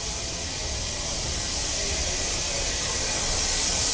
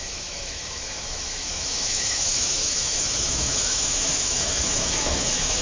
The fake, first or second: second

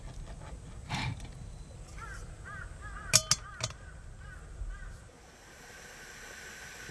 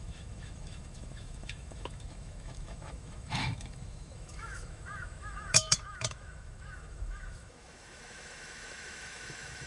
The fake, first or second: second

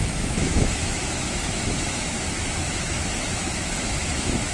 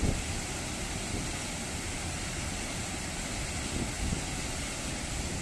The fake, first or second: first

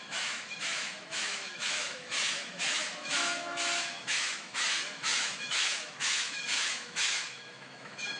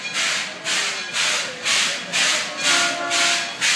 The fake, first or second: first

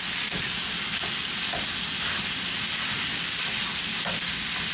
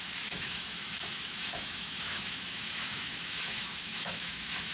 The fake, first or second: second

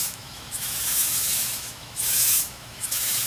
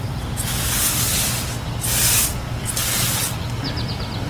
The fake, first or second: first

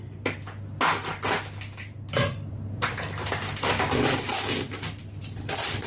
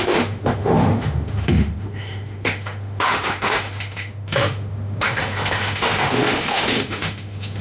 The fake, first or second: second